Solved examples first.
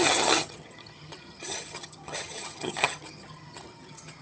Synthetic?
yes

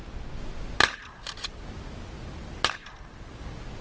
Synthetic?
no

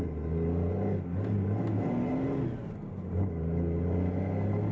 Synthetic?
no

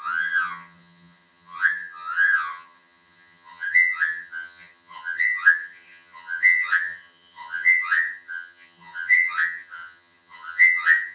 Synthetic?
yes